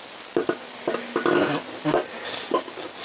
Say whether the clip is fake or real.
real